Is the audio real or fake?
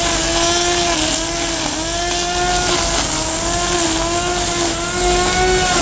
real